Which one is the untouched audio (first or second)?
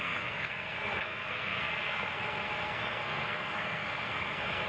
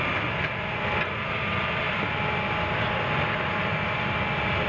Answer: second